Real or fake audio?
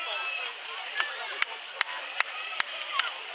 real